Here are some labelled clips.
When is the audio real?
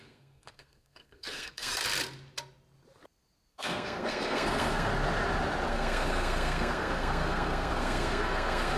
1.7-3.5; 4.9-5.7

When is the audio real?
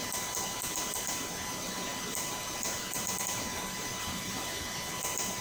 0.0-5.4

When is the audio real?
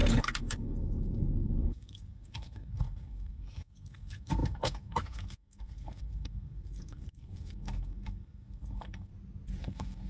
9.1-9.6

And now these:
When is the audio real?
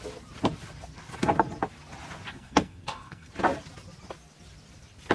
0.0-2.3; 3.3-5.1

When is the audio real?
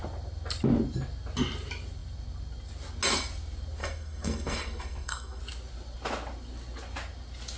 0.0-3.8; 5.4-7.6